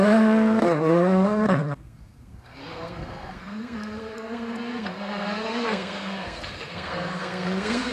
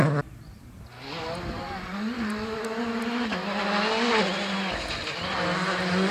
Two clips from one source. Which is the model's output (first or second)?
first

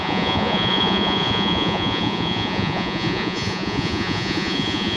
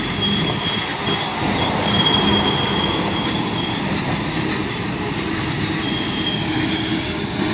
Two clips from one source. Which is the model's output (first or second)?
first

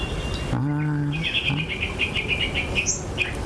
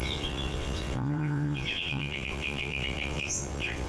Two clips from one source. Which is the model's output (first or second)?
second